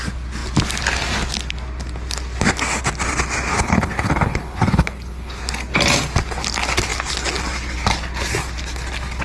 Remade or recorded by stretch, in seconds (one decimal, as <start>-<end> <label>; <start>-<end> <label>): 0.0-3.5 recorded; 3.5-5.4 remade; 5.4-9.2 recorded